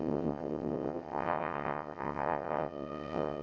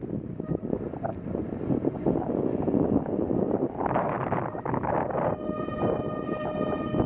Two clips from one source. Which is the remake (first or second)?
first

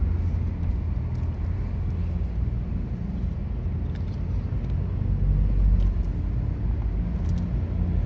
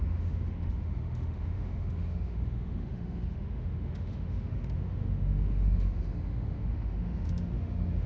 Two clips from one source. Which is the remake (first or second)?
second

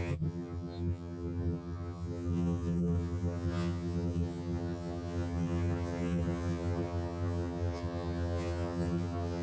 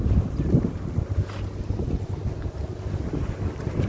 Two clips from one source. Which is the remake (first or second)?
first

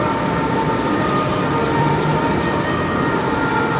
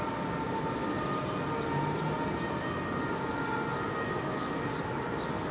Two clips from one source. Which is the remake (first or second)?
first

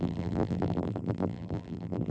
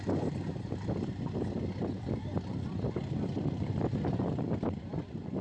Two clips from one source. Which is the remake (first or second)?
first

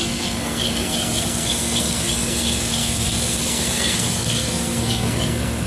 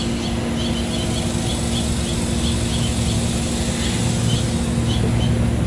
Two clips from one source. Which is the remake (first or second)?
first